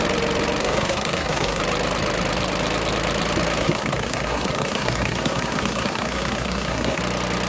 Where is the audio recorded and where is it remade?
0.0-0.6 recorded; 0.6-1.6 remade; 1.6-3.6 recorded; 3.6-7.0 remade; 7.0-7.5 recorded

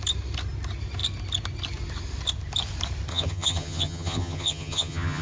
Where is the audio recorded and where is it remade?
0.0-3.1 recorded; 3.1-5.2 remade

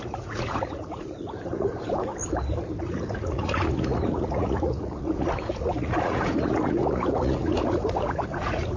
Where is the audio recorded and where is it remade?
0.0-2.1 remade; 2.1-2.8 recorded; 2.8-8.8 remade

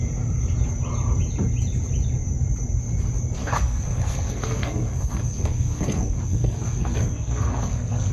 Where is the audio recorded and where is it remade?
0.0-3.4 recorded; 3.4-8.1 remade

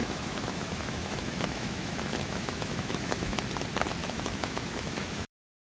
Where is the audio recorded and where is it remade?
0.0-3.4 remade; 3.4-4.0 recorded; 4.0-5.7 remade

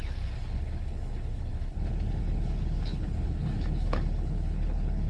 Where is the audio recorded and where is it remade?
0.0-5.1 remade

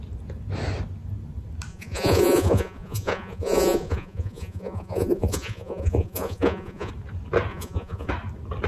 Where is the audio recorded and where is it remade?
0.0-1.7 recorded; 1.7-6.9 remade; 6.9-7.5 recorded; 7.5-8.1 remade; 8.1-8.7 recorded

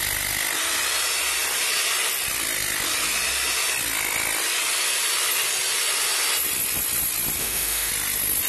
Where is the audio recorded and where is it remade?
0.0-7.4 recorded; 7.4-7.9 remade; 7.9-8.5 recorded